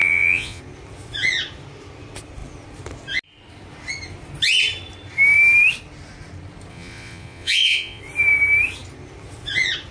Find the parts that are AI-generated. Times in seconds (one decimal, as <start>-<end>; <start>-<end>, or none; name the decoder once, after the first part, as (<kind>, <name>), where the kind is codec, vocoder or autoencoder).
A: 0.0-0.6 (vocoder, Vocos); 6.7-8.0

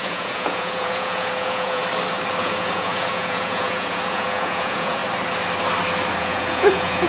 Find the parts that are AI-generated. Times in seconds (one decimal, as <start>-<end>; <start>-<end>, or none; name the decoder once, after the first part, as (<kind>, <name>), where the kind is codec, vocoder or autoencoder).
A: 0.0-1.8 (vocoder, Vocos); 2.4-5.0; 6.2-7.1

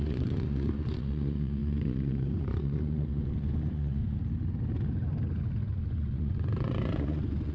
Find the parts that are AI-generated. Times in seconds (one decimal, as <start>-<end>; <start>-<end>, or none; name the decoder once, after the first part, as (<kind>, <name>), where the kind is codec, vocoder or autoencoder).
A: 0.0-4.0 (vocoder, Vocos); 5.9-7.5